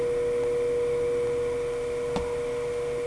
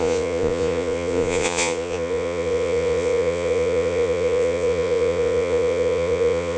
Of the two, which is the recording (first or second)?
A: first